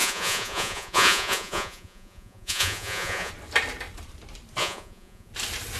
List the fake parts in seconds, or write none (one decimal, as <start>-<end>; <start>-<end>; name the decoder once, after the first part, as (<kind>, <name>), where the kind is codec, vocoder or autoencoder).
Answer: 0.0-3.3 (vocoder, Vocos); 4.6-5.3